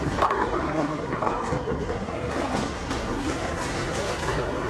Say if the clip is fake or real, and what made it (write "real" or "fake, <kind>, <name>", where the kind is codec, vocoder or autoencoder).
fake, codec, SNAC